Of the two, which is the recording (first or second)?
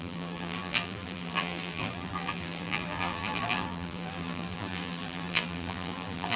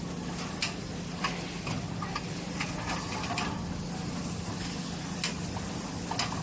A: second